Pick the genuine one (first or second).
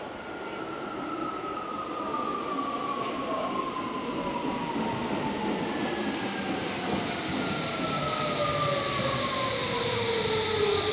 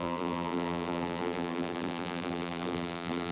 first